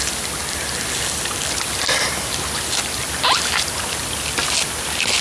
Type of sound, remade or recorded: recorded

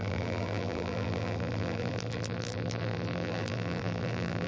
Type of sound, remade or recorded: remade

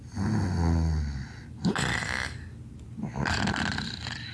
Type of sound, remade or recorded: recorded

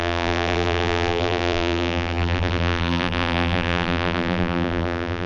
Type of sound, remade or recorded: remade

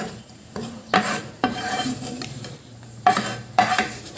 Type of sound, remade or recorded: remade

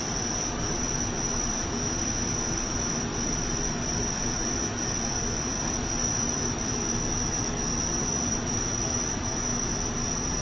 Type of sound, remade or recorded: remade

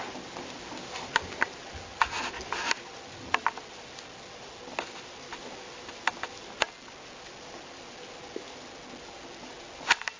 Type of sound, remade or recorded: recorded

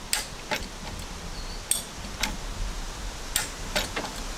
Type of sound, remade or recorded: recorded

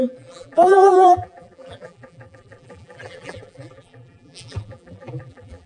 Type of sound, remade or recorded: remade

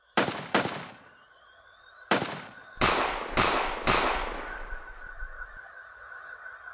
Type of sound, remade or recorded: remade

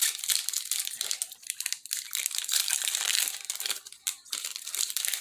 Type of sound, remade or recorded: remade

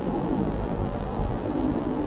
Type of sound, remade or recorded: remade